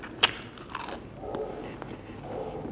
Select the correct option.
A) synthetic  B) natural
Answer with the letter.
B